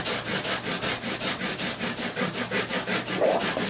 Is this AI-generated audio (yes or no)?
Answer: no